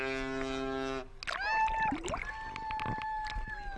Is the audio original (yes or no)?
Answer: yes